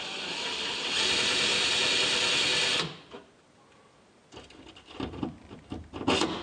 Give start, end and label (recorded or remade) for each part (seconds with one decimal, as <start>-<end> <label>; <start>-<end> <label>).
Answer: 0.0-6.4 recorded